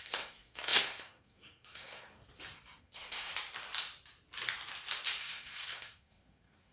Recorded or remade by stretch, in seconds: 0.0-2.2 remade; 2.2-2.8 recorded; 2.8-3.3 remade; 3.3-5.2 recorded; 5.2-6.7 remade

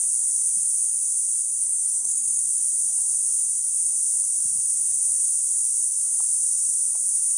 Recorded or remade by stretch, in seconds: 0.0-1.6 recorded; 1.6-2.4 remade; 2.4-7.4 recorded

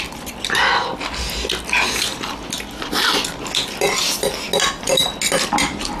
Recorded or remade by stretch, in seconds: 0.0-6.0 recorded

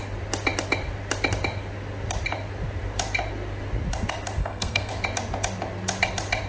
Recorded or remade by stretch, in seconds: 0.0-4.4 recorded; 4.4-4.9 remade; 4.9-6.5 recorded

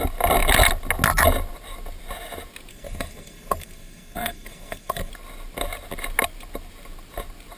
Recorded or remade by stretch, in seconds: 0.0-2.7 recorded; 2.7-5.1 remade; 5.1-7.6 recorded

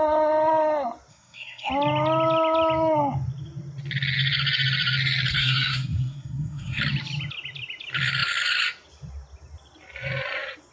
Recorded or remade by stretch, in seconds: 0.0-1.1 recorded; 1.1-1.7 remade; 1.7-5.3 recorded; 5.3-6.8 remade; 6.8-10.7 recorded